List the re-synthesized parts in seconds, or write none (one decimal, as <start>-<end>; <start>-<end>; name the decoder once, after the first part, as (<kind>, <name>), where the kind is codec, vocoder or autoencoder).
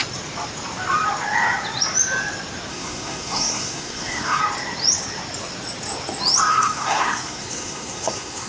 2.7-4.4 (codec, SNAC); 6.5-8.5